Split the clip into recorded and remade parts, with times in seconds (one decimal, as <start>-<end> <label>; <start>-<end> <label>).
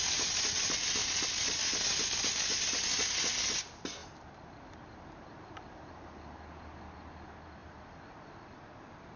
0.0-4.0 recorded; 4.0-6.3 remade; 6.3-7.6 recorded; 7.6-8.6 remade; 8.6-9.2 recorded